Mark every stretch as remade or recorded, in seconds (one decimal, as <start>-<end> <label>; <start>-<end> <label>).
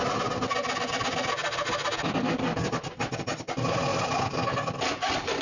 0.0-5.4 recorded